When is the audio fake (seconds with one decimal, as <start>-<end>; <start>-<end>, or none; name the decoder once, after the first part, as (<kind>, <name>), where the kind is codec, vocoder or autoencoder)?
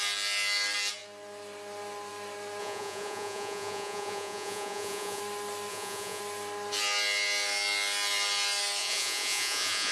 2.6-5.2 (vocoder, Vocos); 5.7-6.2; 8.8-9.9